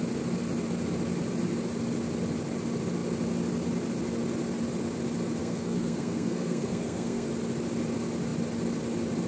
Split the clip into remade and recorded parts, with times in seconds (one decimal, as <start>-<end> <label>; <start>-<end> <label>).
0.0-5.4 recorded; 5.4-7.3 remade; 7.3-9.3 recorded

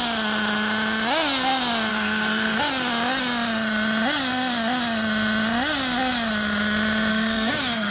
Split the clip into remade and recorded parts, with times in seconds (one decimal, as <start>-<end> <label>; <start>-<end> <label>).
0.0-1.9 recorded; 1.9-2.6 remade; 2.6-7.1 recorded; 7.1-7.9 remade

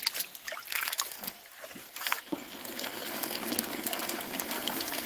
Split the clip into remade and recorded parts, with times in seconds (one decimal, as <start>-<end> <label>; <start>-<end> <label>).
0.0-0.7 recorded; 0.7-1.4 remade; 1.4-1.8 recorded; 1.8-5.1 remade

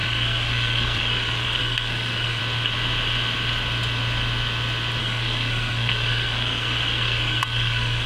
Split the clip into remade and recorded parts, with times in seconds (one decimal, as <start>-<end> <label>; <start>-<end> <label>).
0.0-2.4 remade; 2.4-5.0 recorded; 5.0-8.1 remade

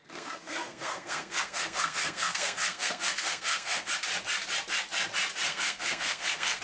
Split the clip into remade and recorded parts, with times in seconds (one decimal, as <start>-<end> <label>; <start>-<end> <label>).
0.0-3.9 remade; 3.9-5.5 recorded; 5.5-6.6 remade

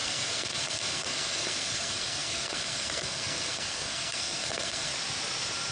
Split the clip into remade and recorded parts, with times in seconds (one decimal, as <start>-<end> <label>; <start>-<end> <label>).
0.0-4.9 remade; 4.9-5.7 recorded

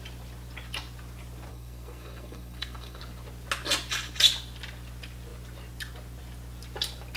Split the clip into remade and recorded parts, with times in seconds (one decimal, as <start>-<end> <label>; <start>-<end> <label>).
0.0-1.5 recorded; 1.5-3.0 remade; 3.0-7.2 recorded

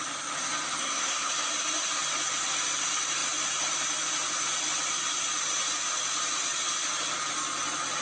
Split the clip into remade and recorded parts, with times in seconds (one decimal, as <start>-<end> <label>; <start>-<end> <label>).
0.0-0.8 recorded; 0.8-1.3 remade; 1.3-8.0 recorded